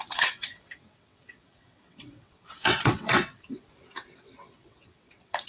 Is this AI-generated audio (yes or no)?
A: yes